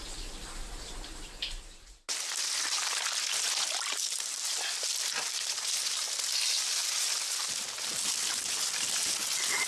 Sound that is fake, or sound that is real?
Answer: real